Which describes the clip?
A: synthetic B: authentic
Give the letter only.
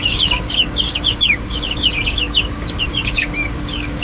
A